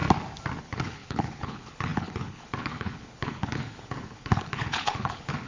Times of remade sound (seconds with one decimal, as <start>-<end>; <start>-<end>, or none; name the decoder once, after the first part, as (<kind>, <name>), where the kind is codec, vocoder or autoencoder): 0.6-5.5 (codec, HILCodec)